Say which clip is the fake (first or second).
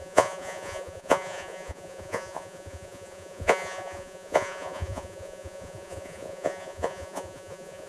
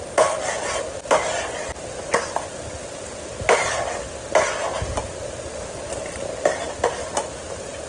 first